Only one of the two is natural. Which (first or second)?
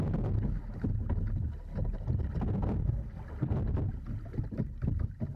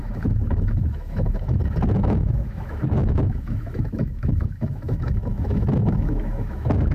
first